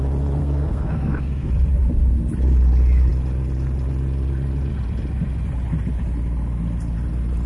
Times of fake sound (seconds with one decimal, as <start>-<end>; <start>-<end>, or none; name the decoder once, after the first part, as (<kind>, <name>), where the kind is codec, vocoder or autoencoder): 0.4-1.5 (codec, SNAC)